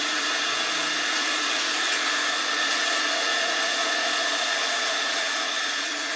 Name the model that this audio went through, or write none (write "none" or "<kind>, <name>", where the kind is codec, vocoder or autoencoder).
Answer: vocoder, Vocos